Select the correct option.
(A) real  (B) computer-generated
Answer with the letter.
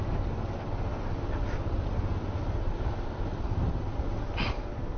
A